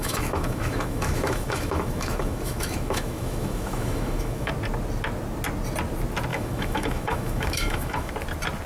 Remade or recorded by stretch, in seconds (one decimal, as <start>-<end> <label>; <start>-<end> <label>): 0.0-4.5 remade; 4.5-6.3 recorded; 6.3-8.1 remade; 8.1-8.7 recorded